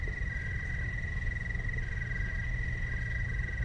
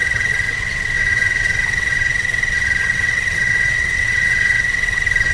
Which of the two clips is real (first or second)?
first